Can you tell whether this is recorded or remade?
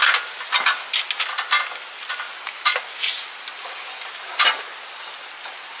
recorded